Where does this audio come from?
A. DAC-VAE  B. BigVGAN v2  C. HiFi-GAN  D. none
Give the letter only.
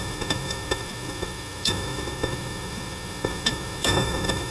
A